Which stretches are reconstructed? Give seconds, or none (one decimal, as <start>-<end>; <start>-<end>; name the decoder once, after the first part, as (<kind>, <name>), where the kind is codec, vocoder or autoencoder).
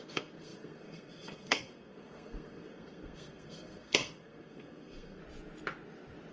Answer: 0.0-5.2 (codec, SNAC)